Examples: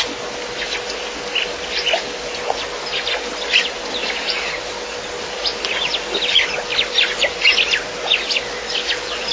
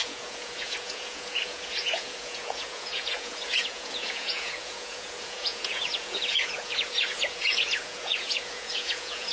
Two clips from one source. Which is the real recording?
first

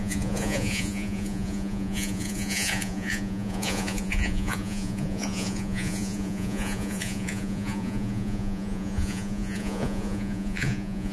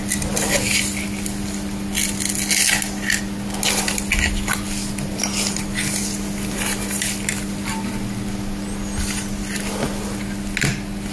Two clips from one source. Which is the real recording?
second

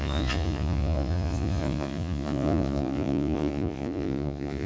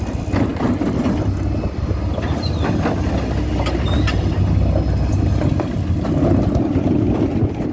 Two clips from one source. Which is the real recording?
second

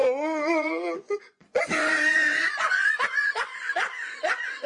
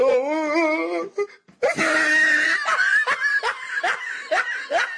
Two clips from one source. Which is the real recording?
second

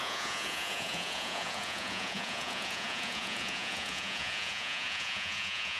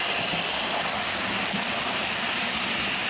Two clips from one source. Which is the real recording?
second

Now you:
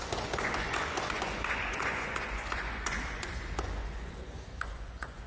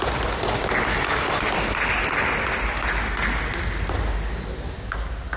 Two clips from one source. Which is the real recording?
second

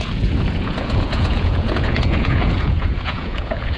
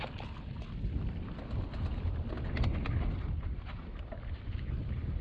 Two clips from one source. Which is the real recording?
second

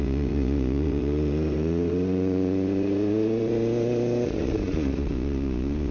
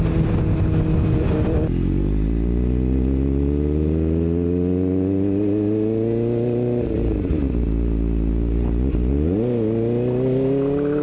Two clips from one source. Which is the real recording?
second